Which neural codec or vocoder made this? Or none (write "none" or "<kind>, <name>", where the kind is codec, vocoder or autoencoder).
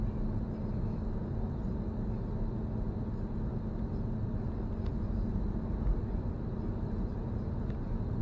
none